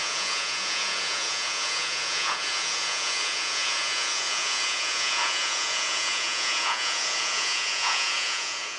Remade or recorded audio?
remade